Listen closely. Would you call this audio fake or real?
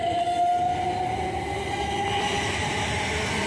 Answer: real